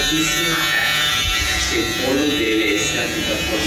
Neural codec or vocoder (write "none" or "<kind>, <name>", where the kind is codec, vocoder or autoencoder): vocoder, Vocos